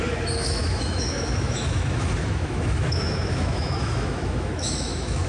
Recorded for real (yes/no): no